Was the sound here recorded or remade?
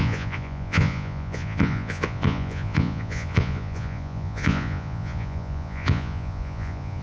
remade